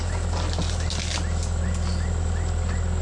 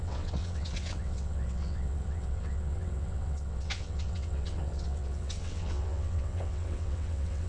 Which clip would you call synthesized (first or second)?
second